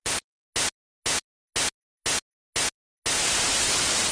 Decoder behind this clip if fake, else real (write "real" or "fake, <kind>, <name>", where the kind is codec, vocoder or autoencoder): real